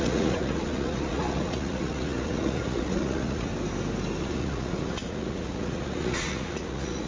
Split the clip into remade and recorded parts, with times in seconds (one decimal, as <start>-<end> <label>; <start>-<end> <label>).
0.0-3.5 remade; 3.5-4.2 recorded; 4.2-7.1 remade